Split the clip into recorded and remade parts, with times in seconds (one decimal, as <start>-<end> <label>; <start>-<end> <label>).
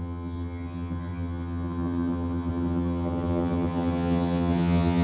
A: 0.0-5.0 remade